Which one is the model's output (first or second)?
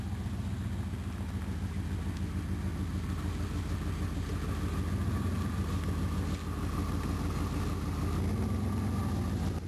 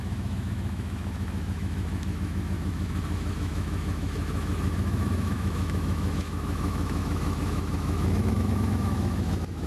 second